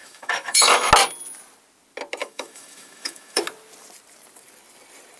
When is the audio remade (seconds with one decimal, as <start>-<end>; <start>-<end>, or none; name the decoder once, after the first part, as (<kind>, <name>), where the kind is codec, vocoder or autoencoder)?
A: 0.0-0.9 (autoencoder, DAC-VAE); 2.2-3.4